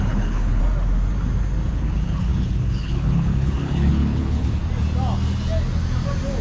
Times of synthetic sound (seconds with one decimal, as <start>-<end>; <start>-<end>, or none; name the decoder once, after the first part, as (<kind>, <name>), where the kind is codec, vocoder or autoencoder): 0.0-0.6 (codec, HILCodec); 1.7-4.6